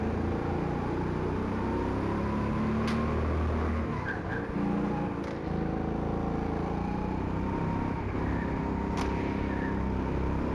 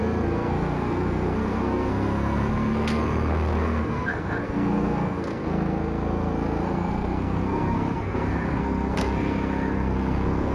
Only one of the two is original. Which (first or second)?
first